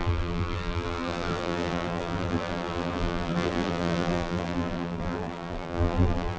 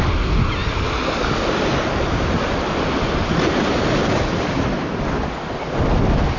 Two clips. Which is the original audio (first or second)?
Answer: second